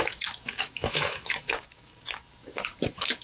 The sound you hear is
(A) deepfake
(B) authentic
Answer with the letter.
A